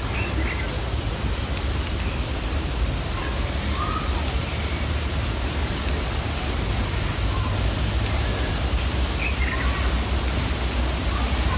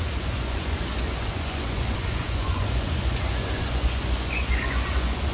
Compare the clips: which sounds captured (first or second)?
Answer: first